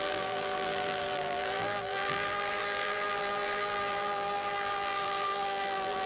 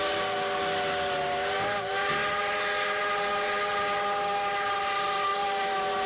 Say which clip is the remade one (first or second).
first